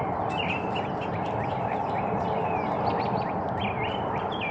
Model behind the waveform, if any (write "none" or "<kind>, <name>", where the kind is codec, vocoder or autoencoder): none